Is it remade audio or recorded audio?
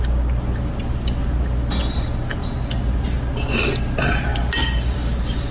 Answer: recorded